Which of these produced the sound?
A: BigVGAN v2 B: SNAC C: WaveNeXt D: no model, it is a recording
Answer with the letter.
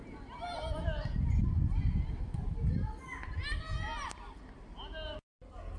D